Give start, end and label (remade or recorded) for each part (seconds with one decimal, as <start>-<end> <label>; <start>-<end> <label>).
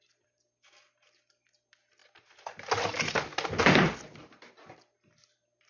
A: 0.0-5.7 recorded